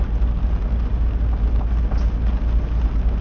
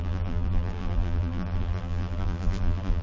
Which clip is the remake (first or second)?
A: second